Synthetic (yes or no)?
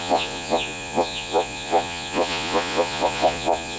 yes